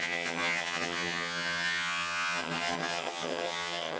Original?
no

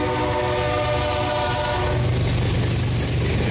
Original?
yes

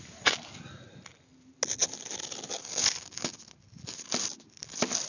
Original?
yes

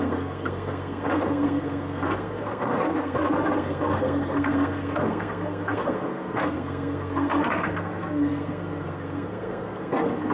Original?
no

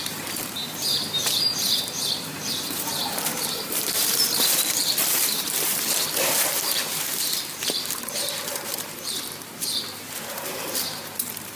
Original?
no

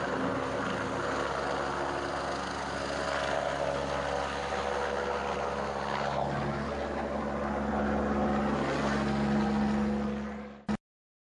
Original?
yes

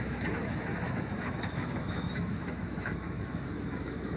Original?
no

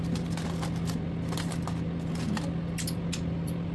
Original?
yes